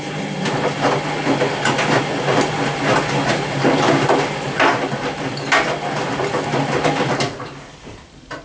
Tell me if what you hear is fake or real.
real